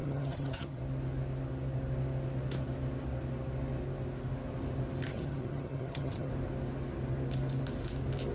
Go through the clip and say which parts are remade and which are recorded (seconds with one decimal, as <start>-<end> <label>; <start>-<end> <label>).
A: 0.0-0.8 remade; 0.8-5.1 recorded; 5.1-6.3 remade; 6.3-8.3 recorded